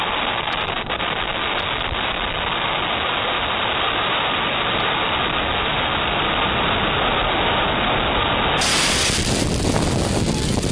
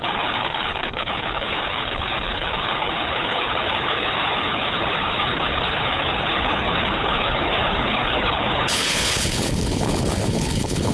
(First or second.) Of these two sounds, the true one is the first